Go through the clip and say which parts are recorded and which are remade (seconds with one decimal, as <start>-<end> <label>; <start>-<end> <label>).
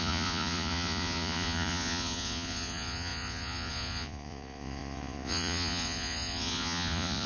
0.0-7.3 remade